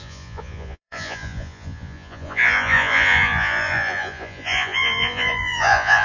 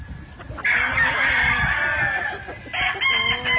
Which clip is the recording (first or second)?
second